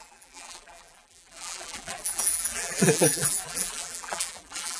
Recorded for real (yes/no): no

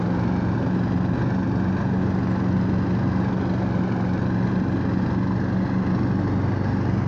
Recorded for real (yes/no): yes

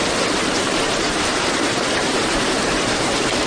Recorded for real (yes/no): no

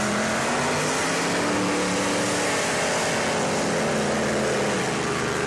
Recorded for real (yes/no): yes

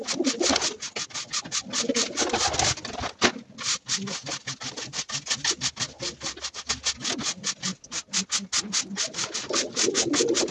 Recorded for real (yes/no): yes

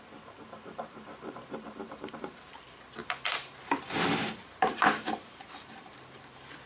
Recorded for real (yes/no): no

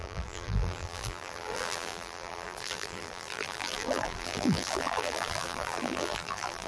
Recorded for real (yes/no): no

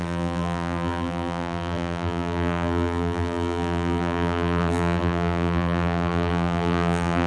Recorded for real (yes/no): no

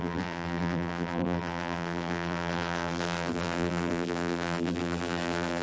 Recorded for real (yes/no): no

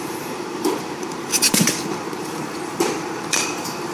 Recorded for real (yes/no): no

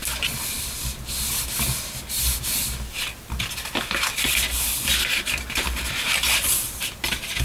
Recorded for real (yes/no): yes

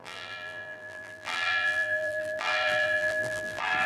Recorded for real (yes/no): no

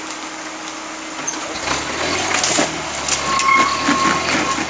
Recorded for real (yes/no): yes